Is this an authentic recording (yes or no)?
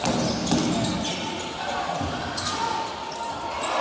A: yes